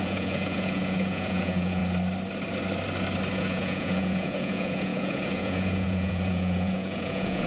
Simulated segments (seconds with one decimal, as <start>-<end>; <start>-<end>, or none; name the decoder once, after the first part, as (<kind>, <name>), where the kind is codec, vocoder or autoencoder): 0.0-1.8 (vocoder, Vocos); 3.3-7.5